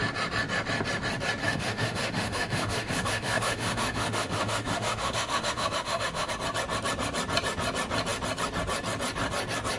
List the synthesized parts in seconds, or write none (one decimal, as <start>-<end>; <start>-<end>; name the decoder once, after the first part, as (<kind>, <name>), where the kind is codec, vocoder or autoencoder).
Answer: 1.4-6.3 (autoencoder, DAC-VAE)